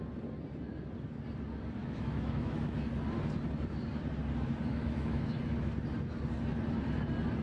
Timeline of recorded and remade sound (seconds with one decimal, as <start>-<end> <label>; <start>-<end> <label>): 0.0-1.8 recorded; 1.8-2.9 remade; 2.9-4.8 recorded; 4.8-5.4 remade; 5.4-7.4 recorded